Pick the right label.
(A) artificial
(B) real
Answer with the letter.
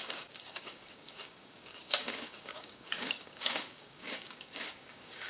A